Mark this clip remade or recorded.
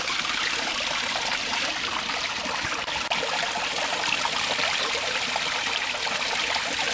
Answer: recorded